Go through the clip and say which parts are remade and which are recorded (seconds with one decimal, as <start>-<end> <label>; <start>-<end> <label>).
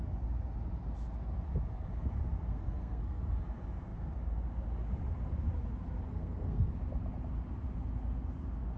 0.0-2.5 recorded; 2.5-3.2 remade; 3.2-6.1 recorded; 6.1-6.7 remade; 6.7-8.8 recorded